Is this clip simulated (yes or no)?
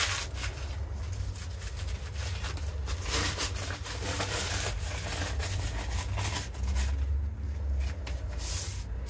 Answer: no